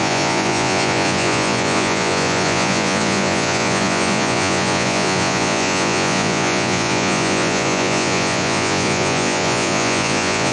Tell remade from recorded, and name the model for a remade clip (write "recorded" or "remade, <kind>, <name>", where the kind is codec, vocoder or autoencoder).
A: remade, vocoder, Vocos